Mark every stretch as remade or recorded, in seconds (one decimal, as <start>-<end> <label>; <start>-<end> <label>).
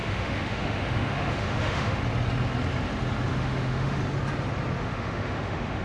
0.0-2.0 remade; 2.0-3.3 recorded; 3.3-4.0 remade; 4.0-4.8 recorded; 4.8-5.8 remade